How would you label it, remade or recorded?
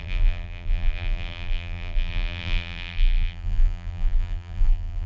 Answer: remade